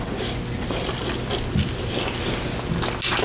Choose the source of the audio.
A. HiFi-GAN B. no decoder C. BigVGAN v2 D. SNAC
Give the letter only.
B